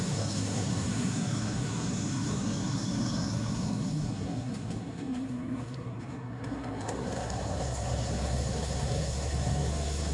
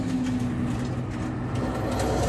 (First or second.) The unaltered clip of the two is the second